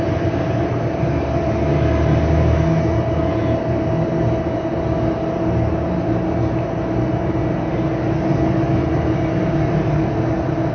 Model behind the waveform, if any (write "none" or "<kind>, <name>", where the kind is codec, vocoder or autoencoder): none